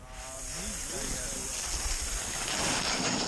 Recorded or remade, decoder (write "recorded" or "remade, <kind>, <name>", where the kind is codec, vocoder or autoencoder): recorded